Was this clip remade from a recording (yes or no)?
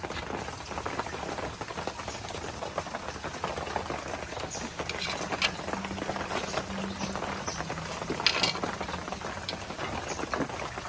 no